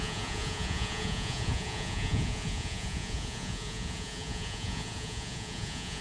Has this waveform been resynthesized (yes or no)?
yes